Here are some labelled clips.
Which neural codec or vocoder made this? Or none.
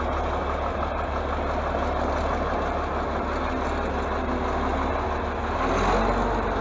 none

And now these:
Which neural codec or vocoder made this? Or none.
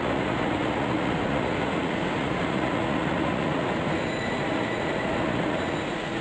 vocoder, Vocos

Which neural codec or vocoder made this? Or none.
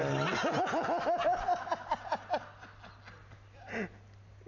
none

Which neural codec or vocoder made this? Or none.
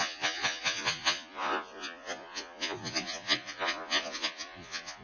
vocoder, Vocos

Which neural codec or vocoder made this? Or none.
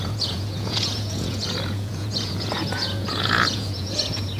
vocoder, Vocos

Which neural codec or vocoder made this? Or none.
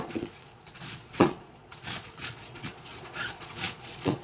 vocoder, Vocos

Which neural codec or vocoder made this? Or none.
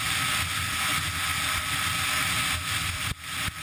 none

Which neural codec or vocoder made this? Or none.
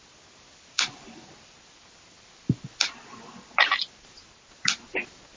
none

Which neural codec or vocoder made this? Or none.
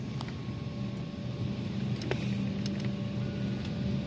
none